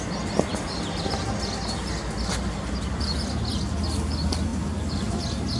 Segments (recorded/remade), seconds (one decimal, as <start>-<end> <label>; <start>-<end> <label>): 0.0-5.6 recorded